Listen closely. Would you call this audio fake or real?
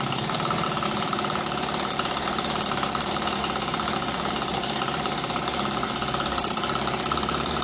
fake